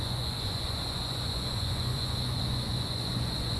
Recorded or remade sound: remade